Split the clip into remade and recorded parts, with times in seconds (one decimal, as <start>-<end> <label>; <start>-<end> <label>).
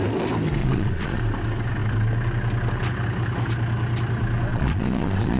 0.0-0.6 recorded; 0.6-1.2 remade; 1.2-4.5 recorded; 4.5-5.4 remade